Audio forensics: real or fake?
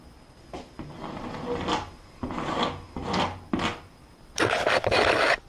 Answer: real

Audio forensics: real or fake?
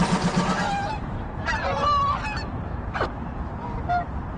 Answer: fake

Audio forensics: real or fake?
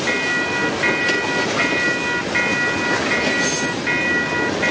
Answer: real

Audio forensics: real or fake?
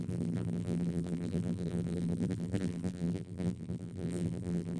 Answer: fake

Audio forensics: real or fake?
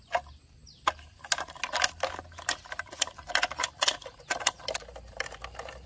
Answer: real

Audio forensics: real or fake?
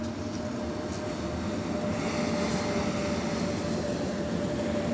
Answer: real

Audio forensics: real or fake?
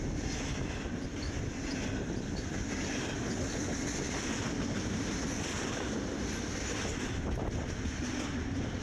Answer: real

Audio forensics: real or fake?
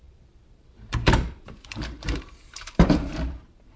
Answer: fake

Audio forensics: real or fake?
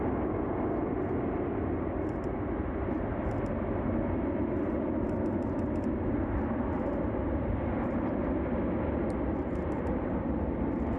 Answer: real